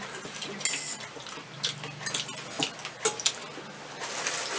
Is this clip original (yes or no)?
yes